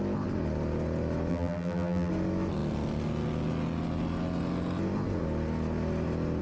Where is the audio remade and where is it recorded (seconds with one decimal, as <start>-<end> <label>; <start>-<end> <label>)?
0.0-1.3 recorded; 1.3-2.1 remade; 2.1-6.4 recorded